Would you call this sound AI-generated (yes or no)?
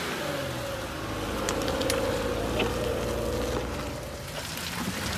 no